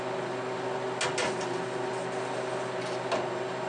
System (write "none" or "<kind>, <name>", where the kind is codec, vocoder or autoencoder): none